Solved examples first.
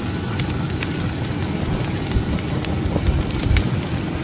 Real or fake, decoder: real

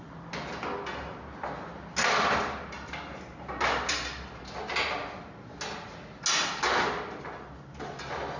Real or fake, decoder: real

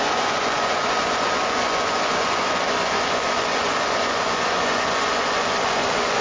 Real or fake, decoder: fake, vocoder, Vocos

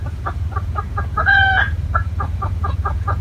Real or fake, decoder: fake, vocoder, Vocos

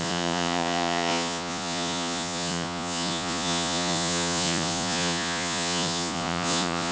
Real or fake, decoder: fake, vocoder, Vocos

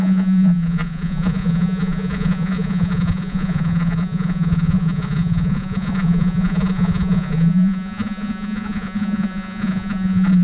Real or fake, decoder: fake, vocoder, Vocos